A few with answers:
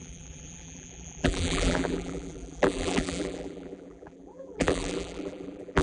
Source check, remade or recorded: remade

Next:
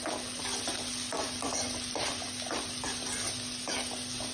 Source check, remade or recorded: recorded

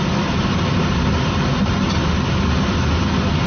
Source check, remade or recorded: recorded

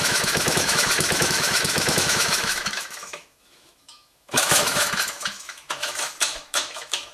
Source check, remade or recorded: remade